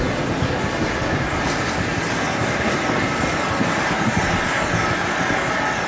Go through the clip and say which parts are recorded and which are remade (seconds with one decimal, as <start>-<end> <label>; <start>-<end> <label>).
0.0-0.8 recorded; 0.8-4.3 remade; 4.3-5.9 recorded